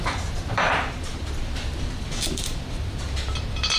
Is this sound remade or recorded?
remade